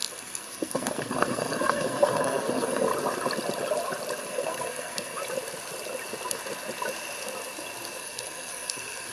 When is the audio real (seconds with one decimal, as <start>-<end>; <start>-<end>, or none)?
2.9-4.2; 5.2-8.0